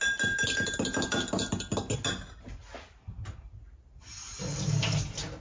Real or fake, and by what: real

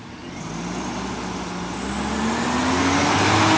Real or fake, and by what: real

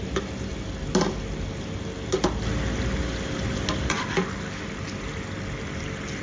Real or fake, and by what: real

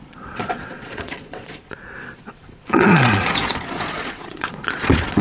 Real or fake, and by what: fake, vocoder, Vocos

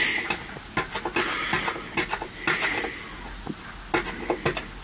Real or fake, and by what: real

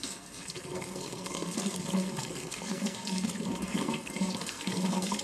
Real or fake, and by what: fake, codec, SNAC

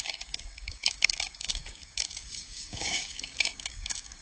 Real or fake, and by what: fake, codec, DAC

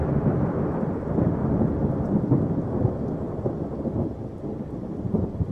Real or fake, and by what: real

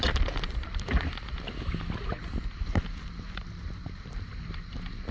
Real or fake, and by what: real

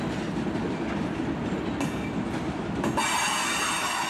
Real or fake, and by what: real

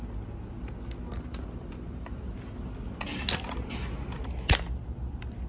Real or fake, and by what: real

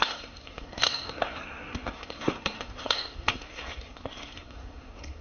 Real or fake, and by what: fake, codec, SNAC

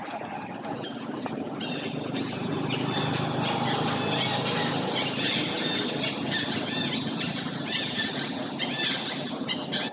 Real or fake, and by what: real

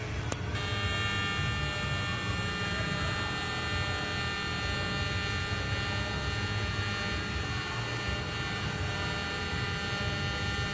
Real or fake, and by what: real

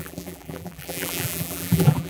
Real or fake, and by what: fake, vocoder, BigVGAN v2